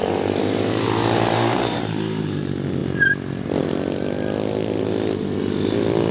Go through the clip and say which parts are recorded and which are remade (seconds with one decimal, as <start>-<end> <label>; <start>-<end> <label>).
0.0-2.2 remade; 2.2-6.1 recorded